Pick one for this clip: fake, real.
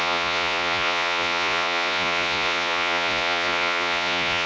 fake